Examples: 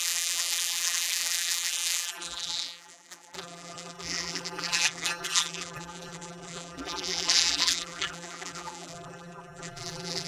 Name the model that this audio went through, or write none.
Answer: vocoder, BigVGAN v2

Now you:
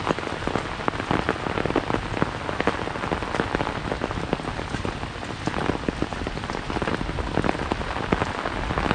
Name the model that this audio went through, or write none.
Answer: none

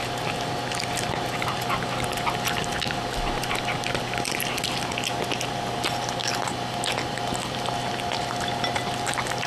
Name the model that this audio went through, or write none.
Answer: none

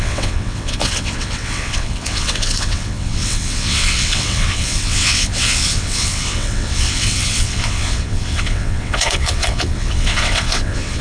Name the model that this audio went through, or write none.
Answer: vocoder, WaveNeXt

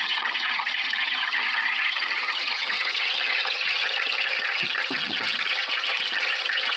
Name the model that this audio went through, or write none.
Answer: vocoder, HiFi-GAN